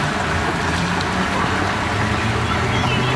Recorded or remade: recorded